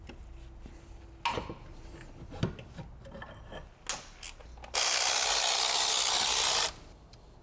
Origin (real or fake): real